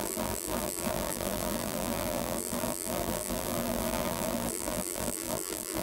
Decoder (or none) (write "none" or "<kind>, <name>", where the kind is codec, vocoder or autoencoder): vocoder, BigVGAN v2